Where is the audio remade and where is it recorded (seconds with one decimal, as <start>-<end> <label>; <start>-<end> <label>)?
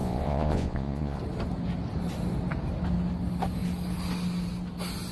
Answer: 0.0-1.2 remade; 1.2-5.1 recorded